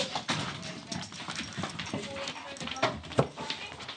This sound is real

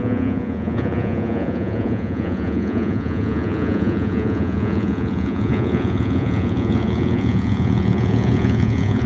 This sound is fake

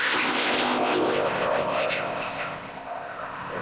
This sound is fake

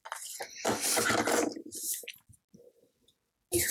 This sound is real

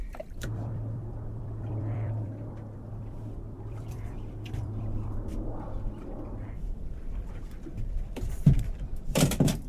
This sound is fake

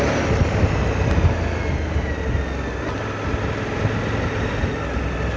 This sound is real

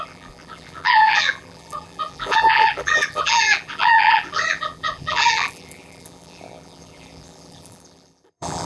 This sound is fake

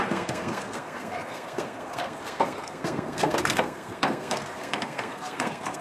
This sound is fake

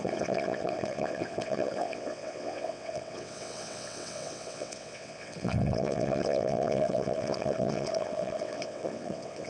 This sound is fake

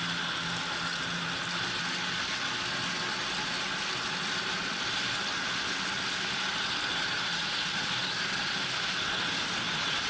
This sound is real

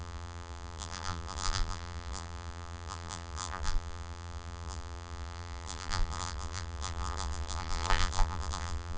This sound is fake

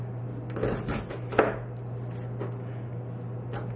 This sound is real